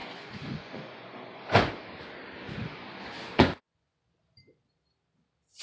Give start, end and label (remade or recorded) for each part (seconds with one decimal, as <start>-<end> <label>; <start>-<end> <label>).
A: 0.0-1.7 remade; 1.7-2.6 recorded; 2.6-4.0 remade; 4.0-5.6 recorded